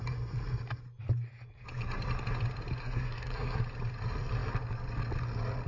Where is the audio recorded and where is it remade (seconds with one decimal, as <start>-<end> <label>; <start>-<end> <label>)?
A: 0.0-2.8 recorded; 2.8-3.6 remade; 3.6-5.7 recorded